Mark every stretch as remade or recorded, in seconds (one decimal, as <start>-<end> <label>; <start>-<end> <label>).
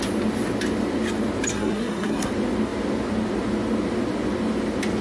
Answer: 0.0-1.5 recorded; 1.5-2.3 remade; 2.3-5.0 recorded